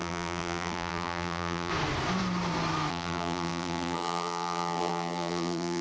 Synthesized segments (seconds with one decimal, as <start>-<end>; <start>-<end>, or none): 0.0-1.7; 2.9-5.8